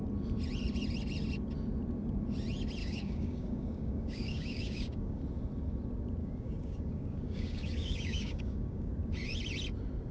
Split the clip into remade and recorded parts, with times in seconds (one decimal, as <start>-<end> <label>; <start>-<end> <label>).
0.0-2.8 recorded; 2.8-5.2 remade; 5.2-6.2 recorded; 6.2-8.9 remade; 8.9-10.1 recorded